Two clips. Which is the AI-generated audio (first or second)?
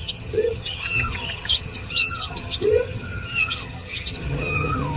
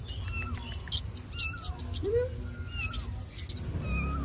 first